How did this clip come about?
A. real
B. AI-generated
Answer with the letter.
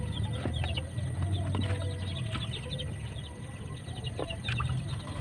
A